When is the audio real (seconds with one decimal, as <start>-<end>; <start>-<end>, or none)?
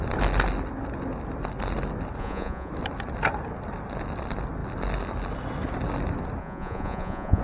0.0-2.2; 2.7-6.4